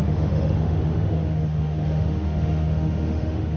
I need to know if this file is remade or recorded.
remade